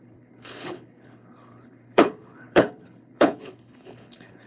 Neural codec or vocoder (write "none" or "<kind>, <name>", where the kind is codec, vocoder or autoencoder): codec, HILCodec